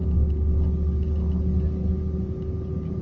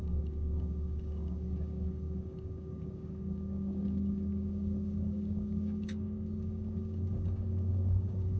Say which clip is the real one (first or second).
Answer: first